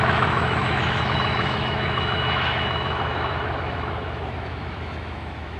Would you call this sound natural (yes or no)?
no